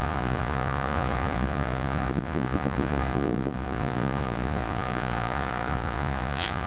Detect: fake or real fake